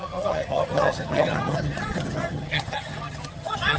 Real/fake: fake